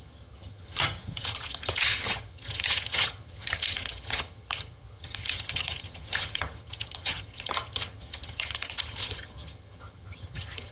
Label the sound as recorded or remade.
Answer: remade